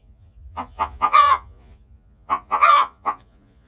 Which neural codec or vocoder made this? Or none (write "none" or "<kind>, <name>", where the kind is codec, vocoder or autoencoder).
vocoder, Vocos